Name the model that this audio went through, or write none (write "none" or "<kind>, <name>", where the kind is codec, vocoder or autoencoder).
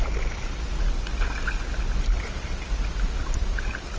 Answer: none